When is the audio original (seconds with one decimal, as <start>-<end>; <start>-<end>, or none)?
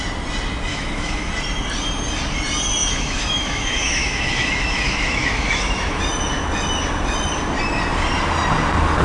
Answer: 0.0-0.7; 1.3-2.8; 6.0-9.0